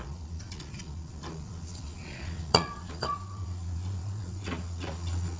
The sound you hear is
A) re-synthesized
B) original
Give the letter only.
A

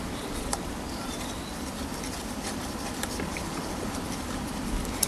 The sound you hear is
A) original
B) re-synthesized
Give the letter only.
B